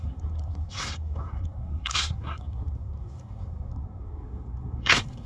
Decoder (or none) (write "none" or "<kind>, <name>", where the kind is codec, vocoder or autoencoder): codec, SNAC